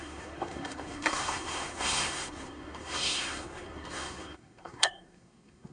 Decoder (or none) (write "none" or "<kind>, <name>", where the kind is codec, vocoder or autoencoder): codec, SNAC